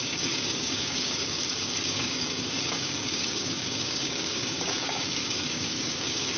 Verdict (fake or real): fake